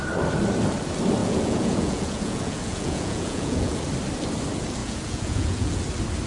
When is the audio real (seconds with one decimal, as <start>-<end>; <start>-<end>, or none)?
0.0-1.2; 3.8-4.8; 5.8-6.3

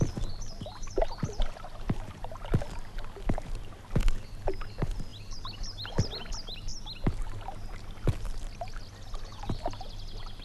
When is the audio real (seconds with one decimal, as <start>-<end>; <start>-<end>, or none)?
0.0-10.4